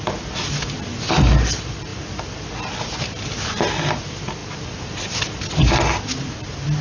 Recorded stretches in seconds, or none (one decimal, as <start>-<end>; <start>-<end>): 0.0-6.8